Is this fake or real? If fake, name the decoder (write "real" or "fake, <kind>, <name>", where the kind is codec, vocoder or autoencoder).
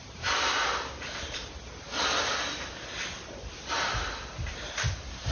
real